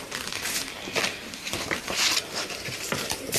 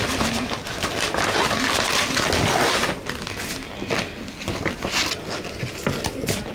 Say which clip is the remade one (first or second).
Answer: first